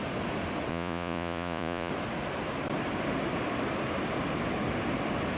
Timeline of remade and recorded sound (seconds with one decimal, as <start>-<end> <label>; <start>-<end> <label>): 0.0-0.7 recorded; 0.7-1.9 remade; 1.9-5.4 recorded